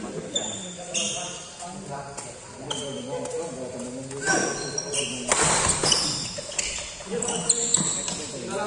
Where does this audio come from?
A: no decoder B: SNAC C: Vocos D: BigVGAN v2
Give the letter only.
A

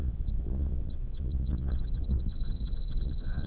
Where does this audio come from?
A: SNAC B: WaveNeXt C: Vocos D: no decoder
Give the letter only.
C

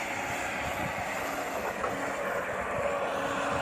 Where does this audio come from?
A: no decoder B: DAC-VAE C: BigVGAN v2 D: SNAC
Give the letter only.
A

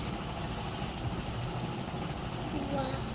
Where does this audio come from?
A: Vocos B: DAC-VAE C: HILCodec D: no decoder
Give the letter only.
D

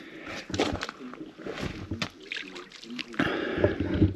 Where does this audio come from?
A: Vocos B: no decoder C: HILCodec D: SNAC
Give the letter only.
B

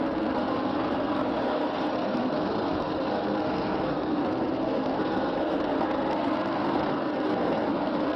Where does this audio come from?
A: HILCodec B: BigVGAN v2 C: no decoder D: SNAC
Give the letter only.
D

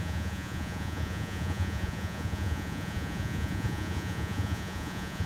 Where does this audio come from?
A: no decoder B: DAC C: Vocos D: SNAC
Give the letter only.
C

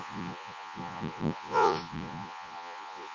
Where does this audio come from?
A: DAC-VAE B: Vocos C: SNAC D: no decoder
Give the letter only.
B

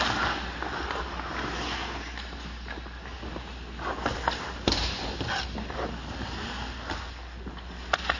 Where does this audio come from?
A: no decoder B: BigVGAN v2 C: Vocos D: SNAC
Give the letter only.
A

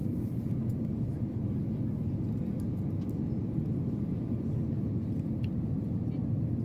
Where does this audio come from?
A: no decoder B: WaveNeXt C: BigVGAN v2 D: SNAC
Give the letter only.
A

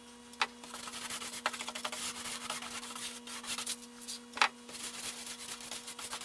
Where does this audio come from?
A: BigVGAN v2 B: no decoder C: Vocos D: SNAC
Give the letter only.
B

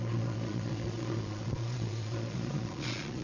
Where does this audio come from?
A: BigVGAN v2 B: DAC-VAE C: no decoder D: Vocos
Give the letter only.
D